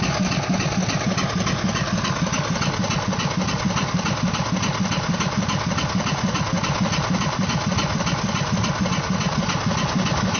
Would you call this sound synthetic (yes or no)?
no